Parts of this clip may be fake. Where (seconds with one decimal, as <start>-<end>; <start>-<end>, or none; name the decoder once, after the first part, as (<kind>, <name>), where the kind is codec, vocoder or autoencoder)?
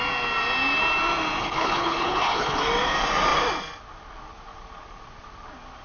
1.4-2.6 (codec, HILCodec)